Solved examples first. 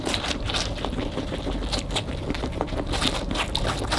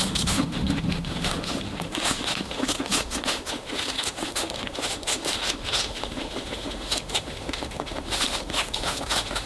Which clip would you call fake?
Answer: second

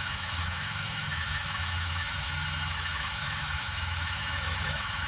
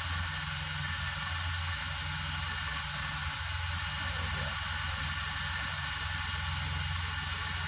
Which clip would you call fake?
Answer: first